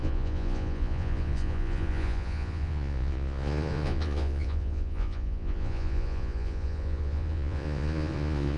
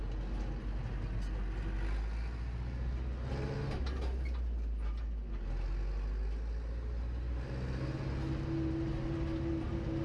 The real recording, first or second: second